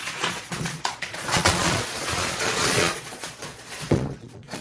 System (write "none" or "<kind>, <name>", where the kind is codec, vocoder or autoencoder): vocoder, Vocos